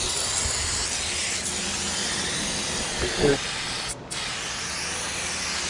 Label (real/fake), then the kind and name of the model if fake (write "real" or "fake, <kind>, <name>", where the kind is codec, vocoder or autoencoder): real